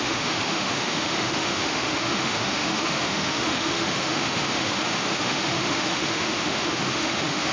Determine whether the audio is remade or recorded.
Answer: remade